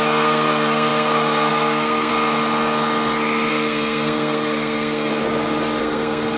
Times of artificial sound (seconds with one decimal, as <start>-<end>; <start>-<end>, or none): 0.0-2.1; 3.5-5.1; 5.8-6.4